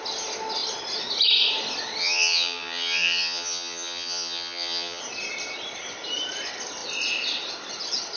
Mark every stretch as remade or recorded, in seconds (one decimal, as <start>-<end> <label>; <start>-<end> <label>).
0.0-2.0 recorded; 2.0-5.0 remade; 5.0-8.2 recorded